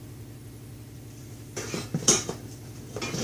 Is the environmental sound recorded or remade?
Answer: remade